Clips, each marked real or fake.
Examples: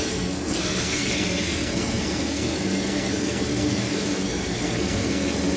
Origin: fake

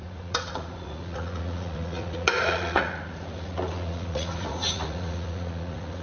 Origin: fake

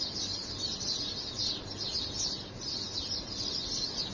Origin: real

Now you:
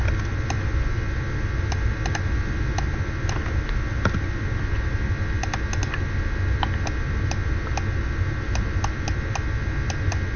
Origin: real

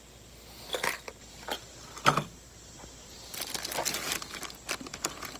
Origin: real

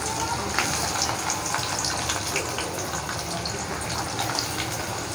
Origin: real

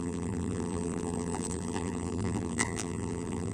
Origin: fake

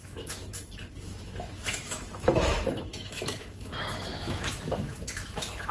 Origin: fake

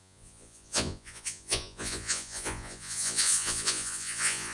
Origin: fake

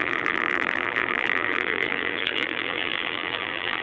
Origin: fake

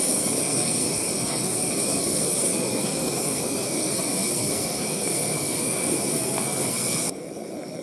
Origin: fake